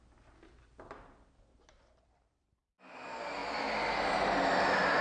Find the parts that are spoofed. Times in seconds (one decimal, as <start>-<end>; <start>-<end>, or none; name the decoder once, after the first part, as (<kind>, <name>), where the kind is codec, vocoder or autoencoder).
none